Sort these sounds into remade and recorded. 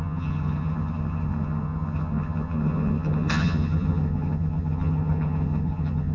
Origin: remade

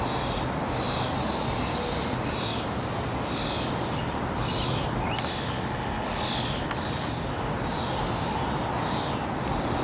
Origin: recorded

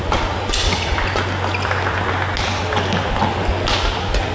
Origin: recorded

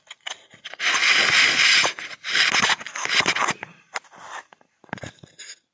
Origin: recorded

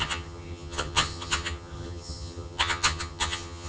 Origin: remade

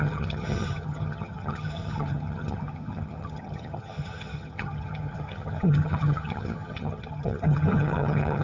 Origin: remade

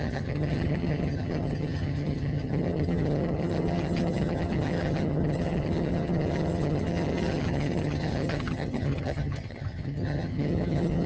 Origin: remade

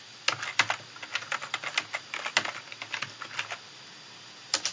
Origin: recorded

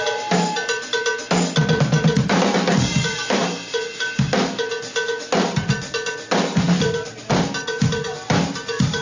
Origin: recorded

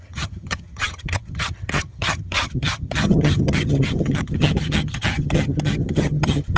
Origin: remade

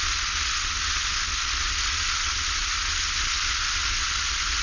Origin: recorded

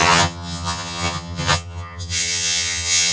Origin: remade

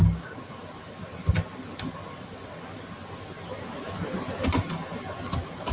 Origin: recorded